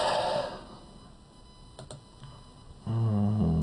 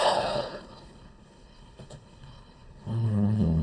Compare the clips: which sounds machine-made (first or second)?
second